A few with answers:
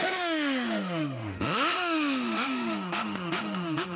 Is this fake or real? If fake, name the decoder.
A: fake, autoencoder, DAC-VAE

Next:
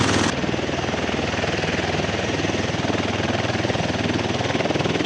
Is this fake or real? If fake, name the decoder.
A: real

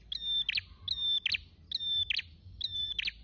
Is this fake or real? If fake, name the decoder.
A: real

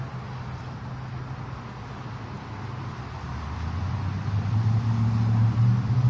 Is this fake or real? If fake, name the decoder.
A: real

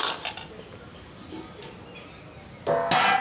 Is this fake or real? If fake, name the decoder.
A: real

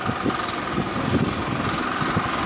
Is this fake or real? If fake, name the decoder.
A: real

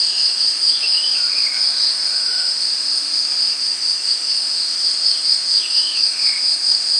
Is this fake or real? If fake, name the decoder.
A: fake, autoencoder, DAC-VAE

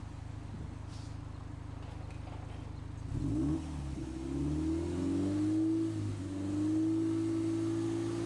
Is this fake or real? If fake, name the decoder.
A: real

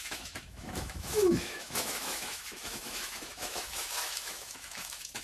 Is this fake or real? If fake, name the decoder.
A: fake, autoencoder, DAC-VAE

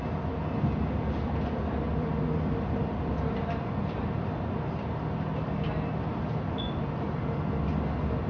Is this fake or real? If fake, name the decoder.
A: real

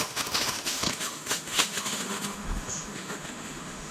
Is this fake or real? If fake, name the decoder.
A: fake, autoencoder, DAC-VAE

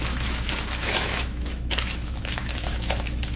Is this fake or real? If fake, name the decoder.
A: fake, autoencoder, DAC-VAE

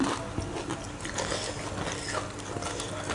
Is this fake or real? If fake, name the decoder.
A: real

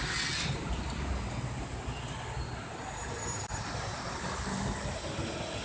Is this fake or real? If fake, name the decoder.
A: real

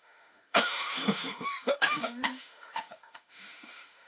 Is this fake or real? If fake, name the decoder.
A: fake, autoencoder, DAC-VAE